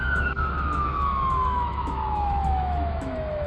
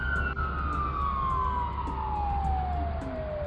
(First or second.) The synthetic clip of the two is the first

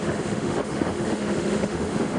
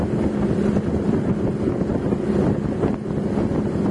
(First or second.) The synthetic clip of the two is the first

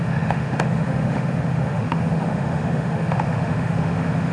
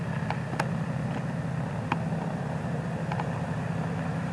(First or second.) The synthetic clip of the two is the first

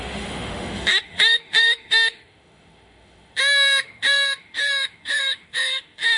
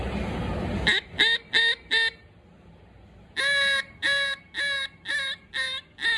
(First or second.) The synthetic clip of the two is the first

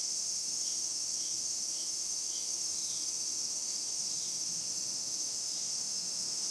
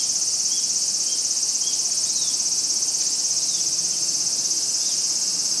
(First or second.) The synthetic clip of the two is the first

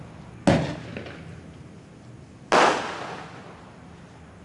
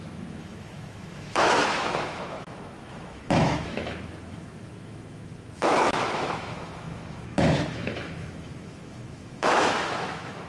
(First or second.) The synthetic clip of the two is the second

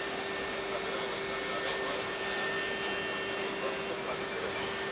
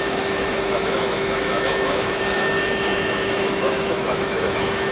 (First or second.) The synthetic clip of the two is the second